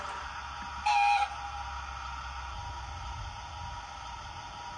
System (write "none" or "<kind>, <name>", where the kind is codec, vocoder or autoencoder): none